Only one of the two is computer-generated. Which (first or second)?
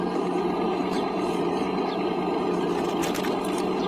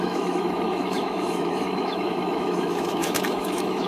second